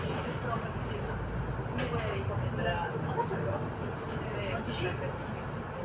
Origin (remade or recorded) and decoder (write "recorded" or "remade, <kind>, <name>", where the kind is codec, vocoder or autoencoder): recorded